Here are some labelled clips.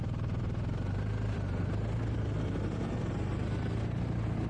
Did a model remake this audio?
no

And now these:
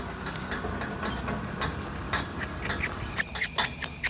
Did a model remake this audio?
no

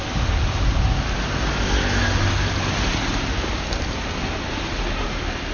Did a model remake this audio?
no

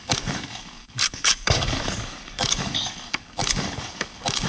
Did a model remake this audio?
yes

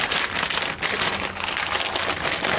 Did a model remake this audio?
no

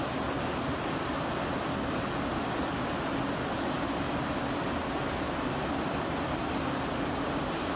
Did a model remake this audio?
no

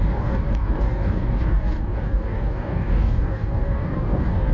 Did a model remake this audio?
yes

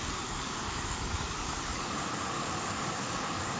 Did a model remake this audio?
yes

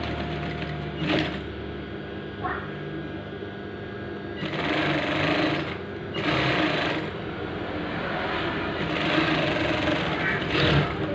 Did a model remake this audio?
no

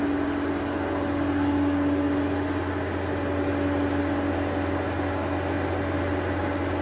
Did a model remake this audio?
no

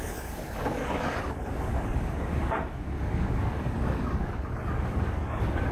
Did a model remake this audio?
yes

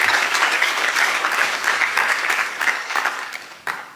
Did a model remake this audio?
yes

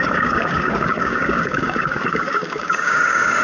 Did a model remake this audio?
yes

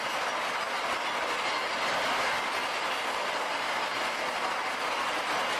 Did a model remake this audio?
no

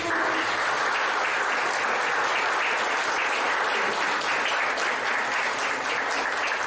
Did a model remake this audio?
no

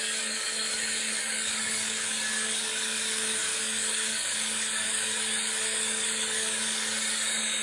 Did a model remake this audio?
yes